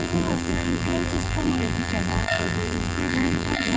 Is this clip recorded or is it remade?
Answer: remade